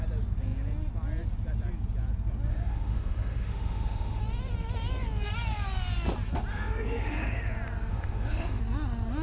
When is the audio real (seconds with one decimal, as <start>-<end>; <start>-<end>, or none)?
0.0-2.5; 4.2-6.5; 7.5-7.9; 8.6-9.2